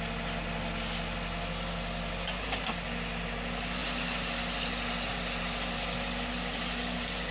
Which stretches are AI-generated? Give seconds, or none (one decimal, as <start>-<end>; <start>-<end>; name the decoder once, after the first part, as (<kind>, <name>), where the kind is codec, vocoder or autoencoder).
none